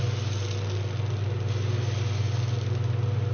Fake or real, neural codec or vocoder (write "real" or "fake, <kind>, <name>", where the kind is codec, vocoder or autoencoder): real